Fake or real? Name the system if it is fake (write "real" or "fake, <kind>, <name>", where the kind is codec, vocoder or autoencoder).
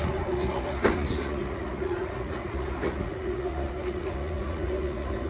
fake, vocoder, Vocos